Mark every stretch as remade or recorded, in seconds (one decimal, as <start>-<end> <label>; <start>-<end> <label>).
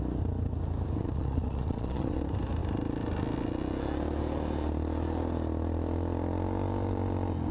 0.0-1.0 recorded; 1.0-2.2 remade; 2.2-7.5 recorded